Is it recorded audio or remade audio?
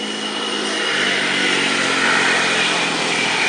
recorded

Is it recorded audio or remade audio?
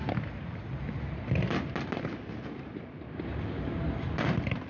recorded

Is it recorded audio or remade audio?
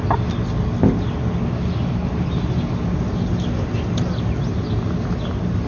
recorded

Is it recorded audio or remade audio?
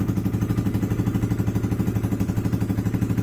recorded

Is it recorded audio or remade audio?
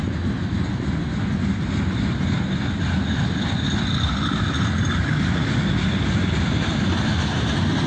recorded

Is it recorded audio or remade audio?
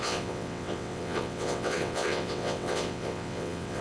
remade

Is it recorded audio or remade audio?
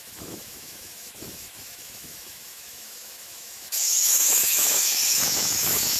remade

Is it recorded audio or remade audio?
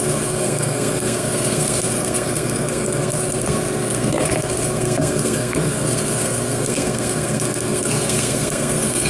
remade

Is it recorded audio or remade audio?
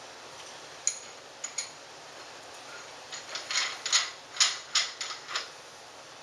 recorded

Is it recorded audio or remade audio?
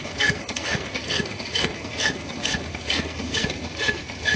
remade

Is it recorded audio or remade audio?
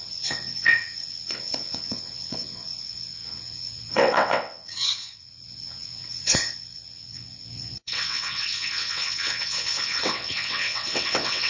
remade